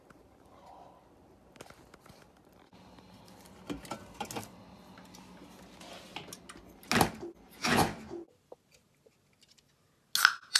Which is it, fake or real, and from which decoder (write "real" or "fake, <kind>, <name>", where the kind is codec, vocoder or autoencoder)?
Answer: real